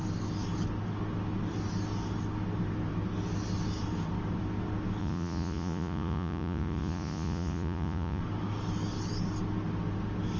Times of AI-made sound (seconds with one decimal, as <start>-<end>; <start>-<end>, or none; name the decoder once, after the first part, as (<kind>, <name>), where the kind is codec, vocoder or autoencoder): 5.0-8.2 (vocoder, Vocos)